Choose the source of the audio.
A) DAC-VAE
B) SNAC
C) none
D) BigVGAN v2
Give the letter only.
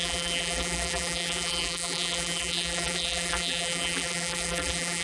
D